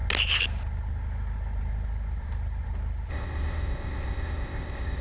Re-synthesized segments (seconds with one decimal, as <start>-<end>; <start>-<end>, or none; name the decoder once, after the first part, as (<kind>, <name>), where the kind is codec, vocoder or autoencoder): 3.1-5.0 (codec, ZipCodec)